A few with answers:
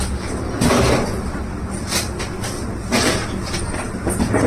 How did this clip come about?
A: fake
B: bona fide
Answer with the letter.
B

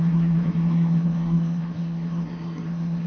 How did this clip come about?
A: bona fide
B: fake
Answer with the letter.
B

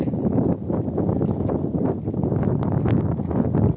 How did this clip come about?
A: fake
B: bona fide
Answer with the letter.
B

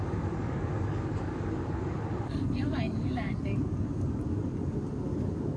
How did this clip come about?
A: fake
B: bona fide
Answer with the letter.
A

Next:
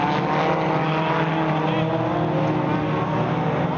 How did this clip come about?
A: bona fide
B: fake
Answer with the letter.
A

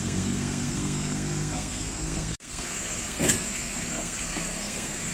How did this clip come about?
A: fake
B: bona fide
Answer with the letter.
A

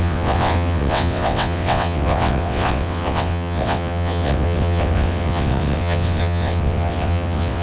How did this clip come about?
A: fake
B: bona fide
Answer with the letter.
A